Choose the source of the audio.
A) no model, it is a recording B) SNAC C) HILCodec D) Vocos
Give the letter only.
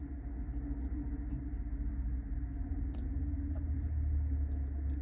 A